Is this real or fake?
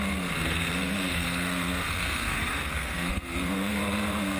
fake